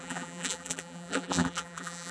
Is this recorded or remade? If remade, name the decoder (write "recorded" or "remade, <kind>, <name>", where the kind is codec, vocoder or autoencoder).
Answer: remade, vocoder, BigVGAN v2